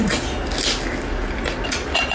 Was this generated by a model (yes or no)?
no